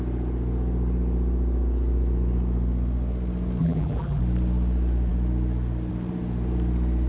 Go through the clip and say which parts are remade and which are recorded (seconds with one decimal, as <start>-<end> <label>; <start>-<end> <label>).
0.0-3.6 recorded; 3.6-4.2 remade; 4.2-7.1 recorded